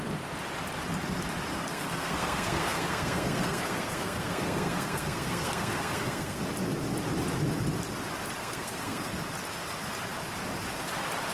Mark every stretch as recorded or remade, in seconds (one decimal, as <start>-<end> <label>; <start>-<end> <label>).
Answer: 0.0-1.5 recorded; 1.5-6.4 remade; 6.4-8.4 recorded; 8.4-9.1 remade; 9.1-11.3 recorded